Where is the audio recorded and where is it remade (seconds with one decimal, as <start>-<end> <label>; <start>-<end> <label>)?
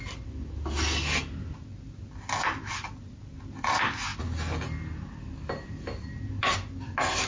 0.0-7.3 recorded